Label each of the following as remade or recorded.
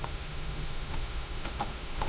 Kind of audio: remade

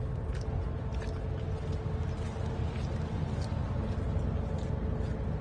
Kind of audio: recorded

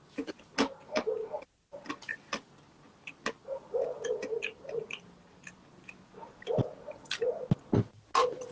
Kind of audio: recorded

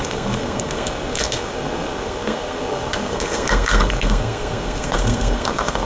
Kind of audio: remade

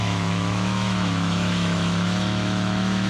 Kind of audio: remade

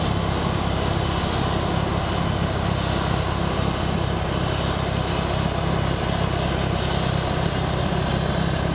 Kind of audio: recorded